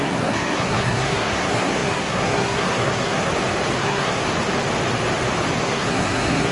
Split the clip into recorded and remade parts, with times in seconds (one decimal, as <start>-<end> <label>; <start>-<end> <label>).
0.0-3.3 remade; 3.3-3.8 recorded; 3.8-4.2 remade; 4.2-5.6 recorded; 5.6-6.5 remade